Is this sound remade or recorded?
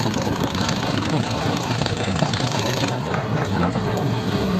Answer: remade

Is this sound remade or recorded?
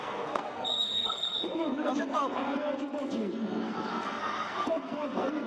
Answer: remade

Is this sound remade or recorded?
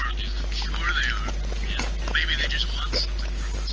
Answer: recorded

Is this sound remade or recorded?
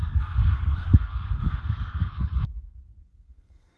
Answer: remade